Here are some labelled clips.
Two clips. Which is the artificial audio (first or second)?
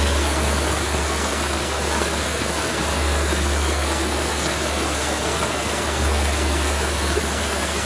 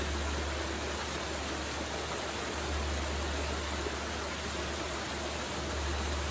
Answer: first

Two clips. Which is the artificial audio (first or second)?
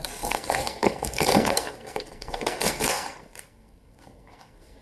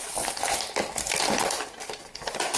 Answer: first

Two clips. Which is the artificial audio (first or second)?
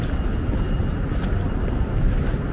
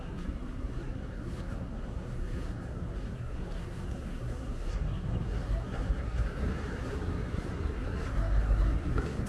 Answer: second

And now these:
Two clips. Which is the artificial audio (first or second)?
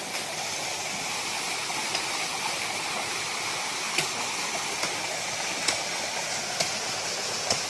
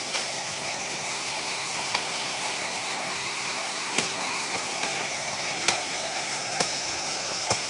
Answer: second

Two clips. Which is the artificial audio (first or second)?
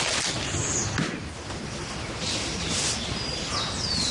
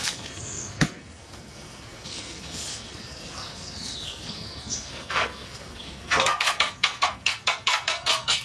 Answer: second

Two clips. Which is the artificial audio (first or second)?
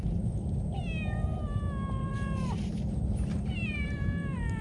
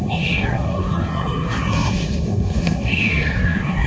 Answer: second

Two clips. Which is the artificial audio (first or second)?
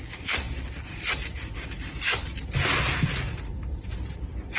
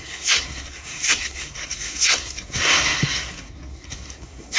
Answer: second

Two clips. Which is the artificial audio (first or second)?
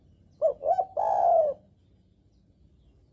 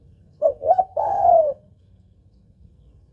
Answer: second